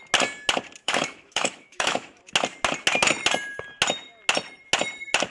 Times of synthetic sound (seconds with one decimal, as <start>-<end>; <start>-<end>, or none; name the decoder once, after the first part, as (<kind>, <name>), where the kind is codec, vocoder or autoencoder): 0.8-2.2 (autoencoder, DAC-VAE)